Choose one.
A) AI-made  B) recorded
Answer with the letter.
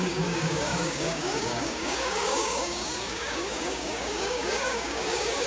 A